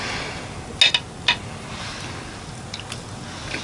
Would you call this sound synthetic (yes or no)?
no